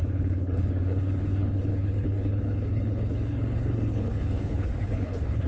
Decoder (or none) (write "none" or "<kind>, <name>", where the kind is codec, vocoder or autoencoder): codec, HILCodec